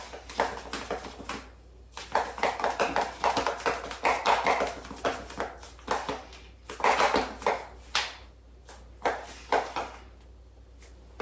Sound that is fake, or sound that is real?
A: real